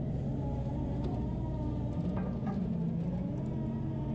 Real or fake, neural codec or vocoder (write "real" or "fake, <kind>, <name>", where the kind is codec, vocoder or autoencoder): real